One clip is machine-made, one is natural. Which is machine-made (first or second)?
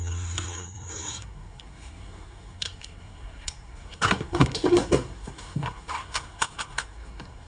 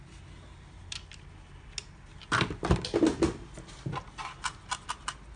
first